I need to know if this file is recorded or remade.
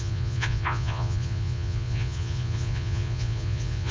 remade